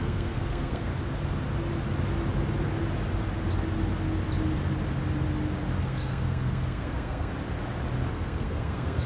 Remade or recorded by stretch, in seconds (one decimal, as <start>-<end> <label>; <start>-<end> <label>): 0.0-0.9 remade; 0.9-5.8 recorded; 5.8-7.3 remade; 7.3-8.1 recorded; 8.1-9.1 remade